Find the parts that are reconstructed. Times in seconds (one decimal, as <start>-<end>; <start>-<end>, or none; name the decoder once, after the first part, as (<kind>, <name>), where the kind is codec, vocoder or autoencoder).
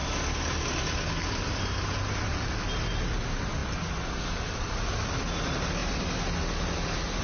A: none